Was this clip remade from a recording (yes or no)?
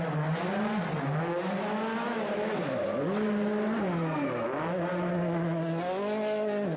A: no